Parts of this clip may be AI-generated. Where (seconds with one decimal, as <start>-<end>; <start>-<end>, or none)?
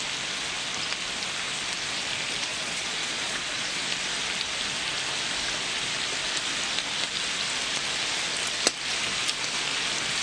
2.5-3.8